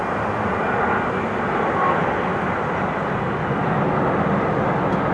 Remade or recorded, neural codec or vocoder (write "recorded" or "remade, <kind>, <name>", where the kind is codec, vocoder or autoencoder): recorded